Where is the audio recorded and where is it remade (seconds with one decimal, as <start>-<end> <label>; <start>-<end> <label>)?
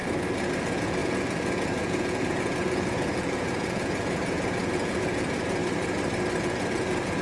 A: 0.0-0.6 recorded; 0.6-5.6 remade; 5.6-6.4 recorded; 6.4-7.2 remade